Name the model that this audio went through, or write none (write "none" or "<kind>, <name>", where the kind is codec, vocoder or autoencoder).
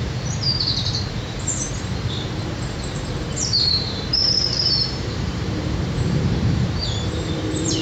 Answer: vocoder, BigVGAN v2